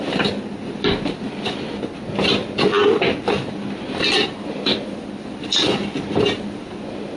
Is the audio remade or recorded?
recorded